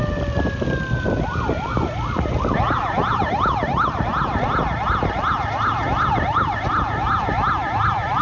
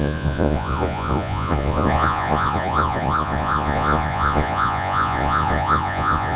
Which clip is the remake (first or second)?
second